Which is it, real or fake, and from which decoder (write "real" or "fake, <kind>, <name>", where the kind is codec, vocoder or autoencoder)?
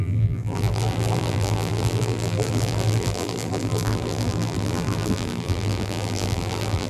fake, vocoder, BigVGAN v2